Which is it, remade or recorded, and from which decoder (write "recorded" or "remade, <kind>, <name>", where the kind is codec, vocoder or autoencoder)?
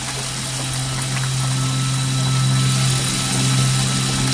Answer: recorded